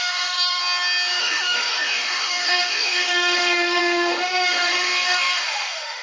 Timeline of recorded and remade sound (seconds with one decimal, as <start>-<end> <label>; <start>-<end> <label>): 0.0-0.6 remade; 0.6-1.2 recorded; 1.2-6.0 remade